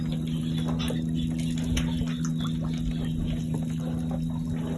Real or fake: real